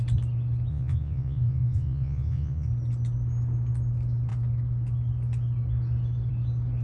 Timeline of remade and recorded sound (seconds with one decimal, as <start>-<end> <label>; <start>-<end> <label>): 0.0-0.7 recorded; 0.7-2.7 remade; 2.7-6.8 recorded